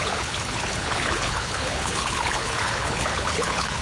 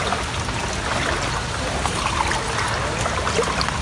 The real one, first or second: second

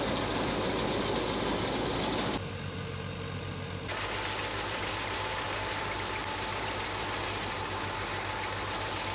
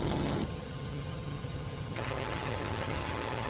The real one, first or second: first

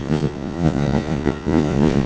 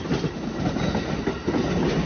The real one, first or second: second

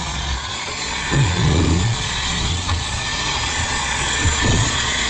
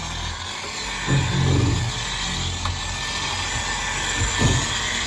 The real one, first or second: second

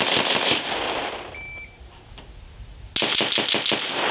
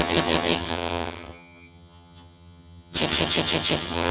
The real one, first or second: first